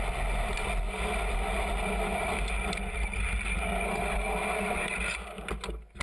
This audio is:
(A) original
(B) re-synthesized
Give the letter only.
A